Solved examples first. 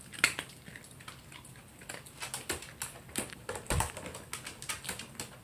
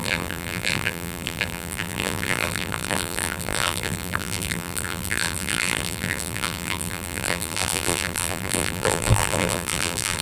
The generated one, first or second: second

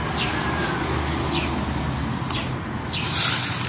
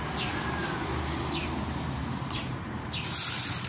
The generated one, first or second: second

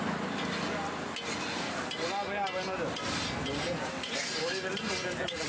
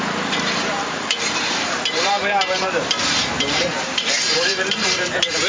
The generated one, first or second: second